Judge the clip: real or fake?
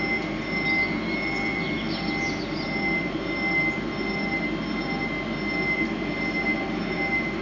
real